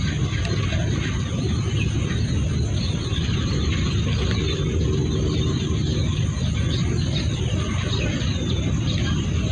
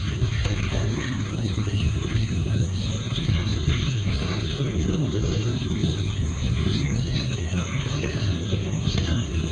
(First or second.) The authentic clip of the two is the first